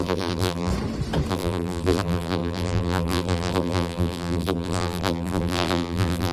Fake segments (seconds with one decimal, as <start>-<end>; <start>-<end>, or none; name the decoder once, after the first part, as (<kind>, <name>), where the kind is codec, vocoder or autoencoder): 0.0-0.7 (vocoder, BigVGAN v2); 1.3-6.3